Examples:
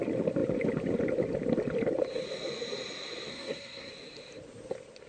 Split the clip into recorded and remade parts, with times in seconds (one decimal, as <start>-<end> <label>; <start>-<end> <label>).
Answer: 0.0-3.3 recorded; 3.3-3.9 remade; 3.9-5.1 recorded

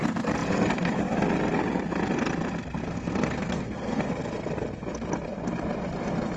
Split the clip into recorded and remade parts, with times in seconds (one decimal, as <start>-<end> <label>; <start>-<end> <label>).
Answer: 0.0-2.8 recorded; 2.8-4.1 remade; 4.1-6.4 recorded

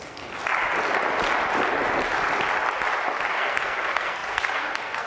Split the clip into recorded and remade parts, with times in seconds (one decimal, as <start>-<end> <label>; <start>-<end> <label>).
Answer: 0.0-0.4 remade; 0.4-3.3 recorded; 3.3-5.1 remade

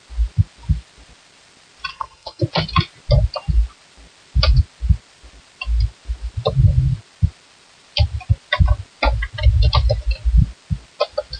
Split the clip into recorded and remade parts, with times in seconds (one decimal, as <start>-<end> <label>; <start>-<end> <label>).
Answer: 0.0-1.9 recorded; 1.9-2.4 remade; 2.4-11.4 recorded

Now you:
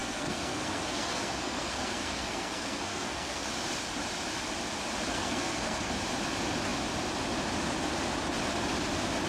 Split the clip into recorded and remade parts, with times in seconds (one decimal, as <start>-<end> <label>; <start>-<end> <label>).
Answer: 0.0-3.5 remade; 3.5-5.1 recorded; 5.1-5.9 remade; 5.9-9.3 recorded